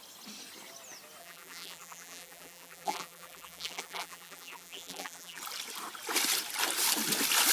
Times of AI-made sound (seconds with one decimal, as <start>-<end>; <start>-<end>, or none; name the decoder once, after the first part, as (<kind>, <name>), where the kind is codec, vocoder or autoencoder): 1.2-5.4 (vocoder, BigVGAN v2)